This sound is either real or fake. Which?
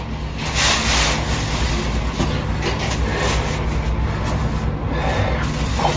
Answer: real